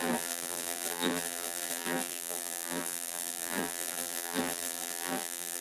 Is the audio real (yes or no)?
no